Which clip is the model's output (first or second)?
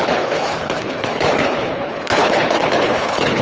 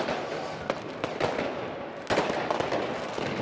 first